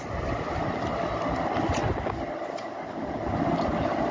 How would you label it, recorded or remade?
recorded